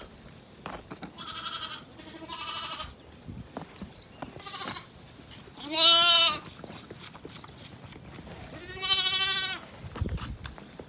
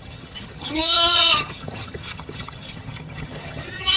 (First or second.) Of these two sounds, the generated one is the second